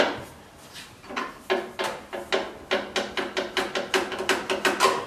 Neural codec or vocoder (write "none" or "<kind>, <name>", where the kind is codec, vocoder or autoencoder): none